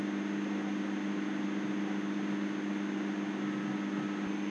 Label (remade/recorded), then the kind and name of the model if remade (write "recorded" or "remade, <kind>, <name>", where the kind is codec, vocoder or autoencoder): recorded